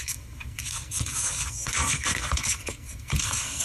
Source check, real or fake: fake